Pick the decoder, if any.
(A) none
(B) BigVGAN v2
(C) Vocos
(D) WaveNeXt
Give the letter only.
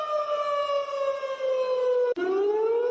A